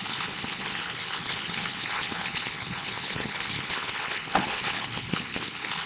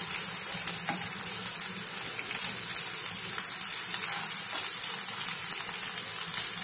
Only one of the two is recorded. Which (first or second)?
second